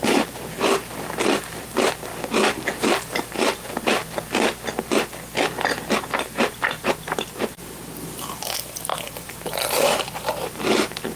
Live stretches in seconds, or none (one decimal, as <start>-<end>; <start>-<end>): 2.1-2.8; 4.0-6.4